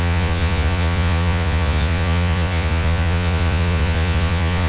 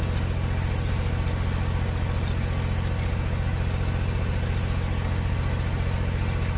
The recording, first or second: second